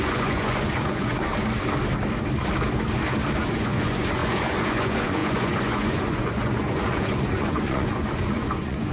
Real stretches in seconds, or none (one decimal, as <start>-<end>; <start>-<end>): 1.3-3.3